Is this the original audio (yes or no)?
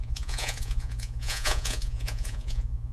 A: no